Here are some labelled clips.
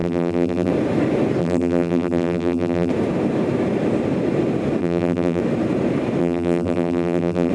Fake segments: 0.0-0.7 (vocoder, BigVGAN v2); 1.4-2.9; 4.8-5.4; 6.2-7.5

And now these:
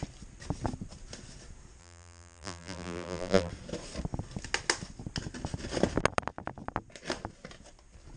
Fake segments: 1.8-3.5 (vocoder, BigVGAN v2)